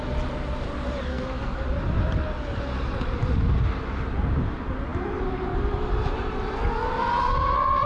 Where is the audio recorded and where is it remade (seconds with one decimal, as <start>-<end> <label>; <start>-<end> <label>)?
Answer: 0.0-1.1 recorded; 1.1-1.6 remade; 1.6-7.9 recorded